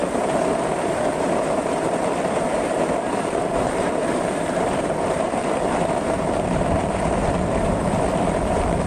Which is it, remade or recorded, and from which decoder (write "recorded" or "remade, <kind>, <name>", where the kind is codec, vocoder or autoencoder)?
remade, vocoder, BigVGAN v2